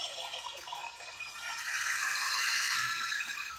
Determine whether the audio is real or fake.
fake